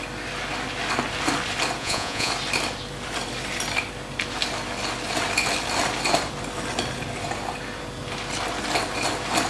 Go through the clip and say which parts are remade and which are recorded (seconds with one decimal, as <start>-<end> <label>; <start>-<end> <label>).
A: 0.0-1.8 recorded; 1.8-2.3 remade; 2.3-9.5 recorded